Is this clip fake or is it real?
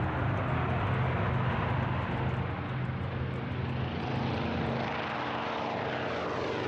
real